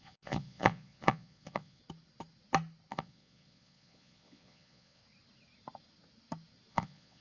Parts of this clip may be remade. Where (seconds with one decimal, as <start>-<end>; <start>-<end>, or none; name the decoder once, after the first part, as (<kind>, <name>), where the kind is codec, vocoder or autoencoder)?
0.0-1.8 (vocoder, Vocos); 2.9-5.0; 6.7-7.2